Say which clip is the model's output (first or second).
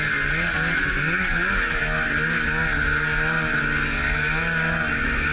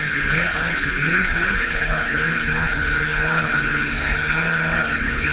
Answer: second